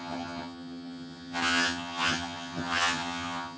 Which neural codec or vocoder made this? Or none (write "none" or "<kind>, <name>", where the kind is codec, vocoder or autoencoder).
vocoder, HiFi-GAN